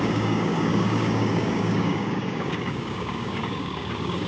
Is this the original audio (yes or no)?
no